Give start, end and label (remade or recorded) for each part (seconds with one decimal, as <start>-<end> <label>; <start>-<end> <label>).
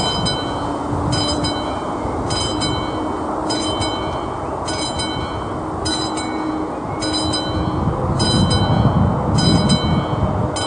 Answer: 0.0-10.7 recorded